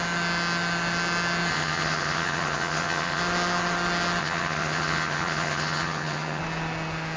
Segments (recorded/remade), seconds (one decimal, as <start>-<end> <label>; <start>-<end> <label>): 0.0-1.5 recorded; 1.5-3.2 remade; 3.2-4.2 recorded; 4.2-6.4 remade; 6.4-7.2 recorded